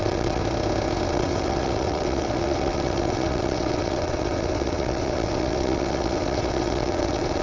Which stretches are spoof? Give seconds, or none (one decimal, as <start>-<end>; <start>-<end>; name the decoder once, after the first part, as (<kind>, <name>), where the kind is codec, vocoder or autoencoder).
0.0-0.4 (vocoder, WaveNeXt); 1.1-7.4